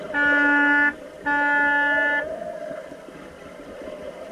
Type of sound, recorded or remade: recorded